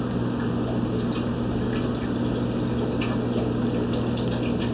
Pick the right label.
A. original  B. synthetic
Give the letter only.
A